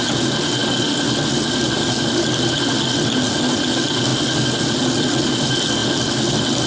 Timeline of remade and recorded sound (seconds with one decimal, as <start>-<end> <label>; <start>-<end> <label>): 0.0-6.7 recorded